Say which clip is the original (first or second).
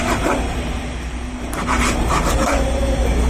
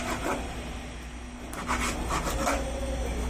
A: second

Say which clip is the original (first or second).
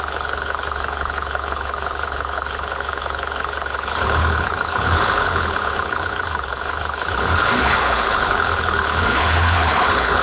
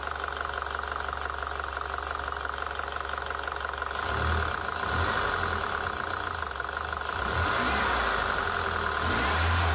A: second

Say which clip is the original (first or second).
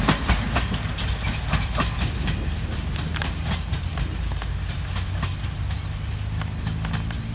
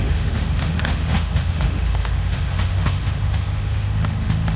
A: first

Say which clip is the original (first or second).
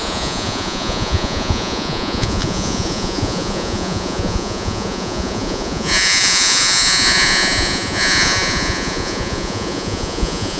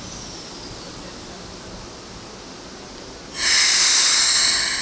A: second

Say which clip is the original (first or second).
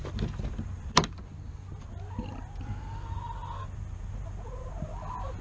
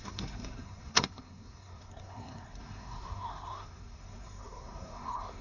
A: first